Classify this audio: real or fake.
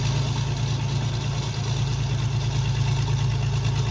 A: real